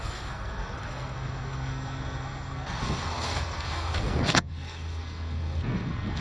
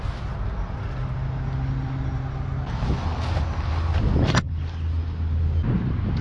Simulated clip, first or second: first